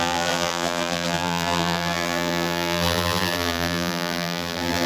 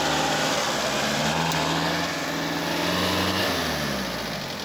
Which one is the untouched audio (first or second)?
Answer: second